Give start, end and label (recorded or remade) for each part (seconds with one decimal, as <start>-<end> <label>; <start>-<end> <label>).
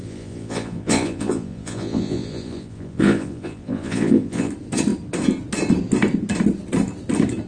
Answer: 0.0-4.5 remade; 4.5-7.5 recorded